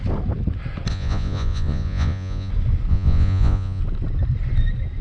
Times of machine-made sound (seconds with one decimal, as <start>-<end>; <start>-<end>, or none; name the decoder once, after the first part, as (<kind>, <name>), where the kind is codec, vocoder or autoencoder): 0.9-2.5 (vocoder, Vocos); 2.9-3.8